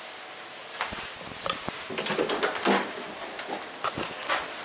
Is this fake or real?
real